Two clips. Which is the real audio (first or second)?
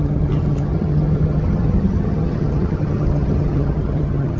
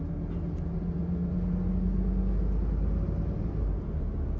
second